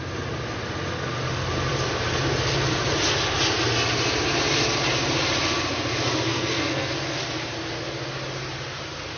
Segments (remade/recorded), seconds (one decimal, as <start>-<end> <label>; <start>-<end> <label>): 0.0-6.3 recorded; 6.3-6.9 remade; 6.9-9.2 recorded